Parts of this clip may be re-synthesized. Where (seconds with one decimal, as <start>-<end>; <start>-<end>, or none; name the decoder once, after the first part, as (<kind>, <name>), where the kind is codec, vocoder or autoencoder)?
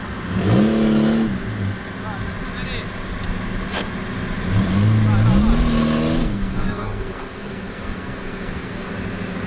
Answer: 6.2-8.9 (codec, SNAC)